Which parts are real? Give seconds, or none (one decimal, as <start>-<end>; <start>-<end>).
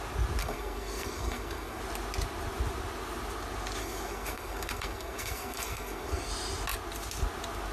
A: 0.0-0.4; 1.8-3.8; 6.3-7.7